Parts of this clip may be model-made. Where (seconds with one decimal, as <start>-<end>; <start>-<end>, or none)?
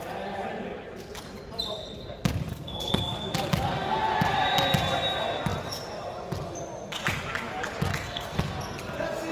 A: 2.5-3.0; 7.9-8.4